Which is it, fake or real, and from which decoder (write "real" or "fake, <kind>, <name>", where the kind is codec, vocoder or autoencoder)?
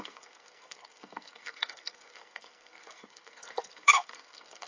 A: fake, codec, SNAC